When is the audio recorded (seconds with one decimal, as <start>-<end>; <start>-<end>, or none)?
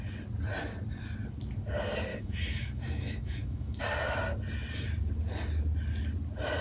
0.0-2.1; 3.8-6.6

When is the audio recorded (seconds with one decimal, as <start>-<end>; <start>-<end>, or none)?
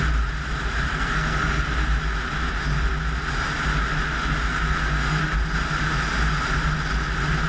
0.0-0.9; 1.6-4.5; 5.2-7.5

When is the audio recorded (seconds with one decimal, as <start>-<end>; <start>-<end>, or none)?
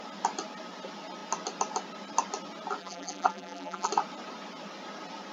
0.0-2.8; 3.9-5.3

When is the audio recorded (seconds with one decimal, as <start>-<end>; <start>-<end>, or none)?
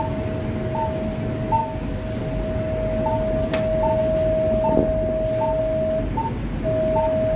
0.0-1.6; 2.2-7.4